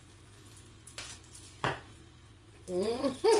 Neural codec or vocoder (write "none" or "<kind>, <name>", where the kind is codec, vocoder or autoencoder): vocoder, Vocos